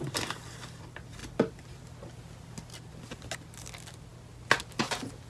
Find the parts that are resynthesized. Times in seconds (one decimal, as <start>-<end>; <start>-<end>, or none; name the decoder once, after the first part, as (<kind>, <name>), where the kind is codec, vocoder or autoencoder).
none